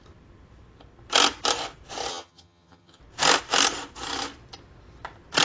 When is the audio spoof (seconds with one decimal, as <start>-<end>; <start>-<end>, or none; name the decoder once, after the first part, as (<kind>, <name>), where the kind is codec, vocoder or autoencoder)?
2.1-3.0 (vocoder, HiFi-GAN)